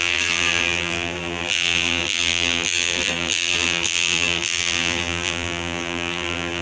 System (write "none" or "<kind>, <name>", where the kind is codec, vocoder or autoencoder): vocoder, BigVGAN v2